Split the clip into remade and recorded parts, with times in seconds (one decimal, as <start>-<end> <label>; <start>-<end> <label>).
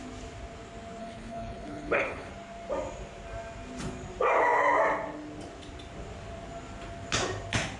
0.0-1.0 recorded; 1.0-2.3 remade; 2.3-7.8 recorded